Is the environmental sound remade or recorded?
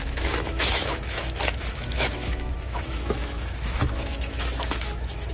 remade